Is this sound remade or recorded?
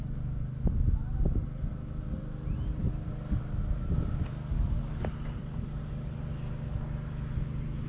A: recorded